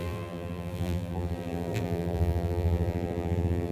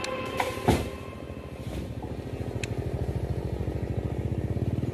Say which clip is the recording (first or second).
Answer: second